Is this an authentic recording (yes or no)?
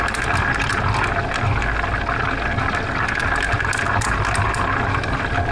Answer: yes